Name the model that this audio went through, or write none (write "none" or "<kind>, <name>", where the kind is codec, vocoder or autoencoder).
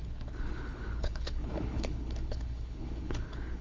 codec, HILCodec